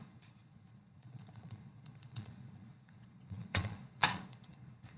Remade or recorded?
remade